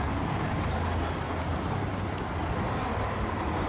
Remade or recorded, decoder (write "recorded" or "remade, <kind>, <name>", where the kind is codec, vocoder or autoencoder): recorded